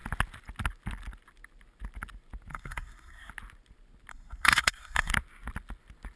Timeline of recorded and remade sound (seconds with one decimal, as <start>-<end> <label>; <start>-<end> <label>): 0.0-2.5 recorded; 2.5-3.3 remade; 3.3-4.1 recorded; 4.1-5.1 remade; 5.1-6.2 recorded